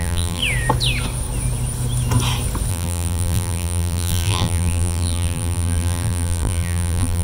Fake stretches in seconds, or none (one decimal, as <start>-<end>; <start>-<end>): 0.0-0.4; 2.7-7.2